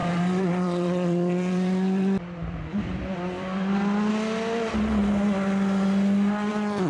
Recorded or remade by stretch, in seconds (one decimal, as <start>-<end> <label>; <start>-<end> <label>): 0.0-4.1 remade; 4.1-6.9 recorded